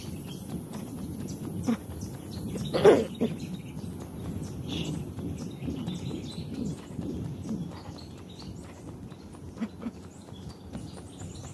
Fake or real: real